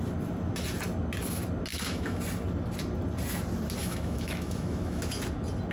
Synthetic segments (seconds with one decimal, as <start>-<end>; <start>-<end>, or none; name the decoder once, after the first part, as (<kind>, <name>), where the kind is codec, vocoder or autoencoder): 1.7-2.2 (autoencoder, DAC-VAE); 3.8-5.2